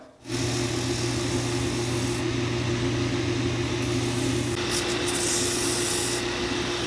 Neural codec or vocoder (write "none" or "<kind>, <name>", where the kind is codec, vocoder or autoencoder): none